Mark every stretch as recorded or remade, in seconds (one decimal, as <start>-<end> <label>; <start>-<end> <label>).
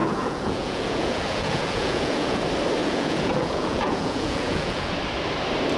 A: 0.0-2.4 remade; 2.4-2.8 recorded; 2.8-4.9 remade; 4.9-5.8 recorded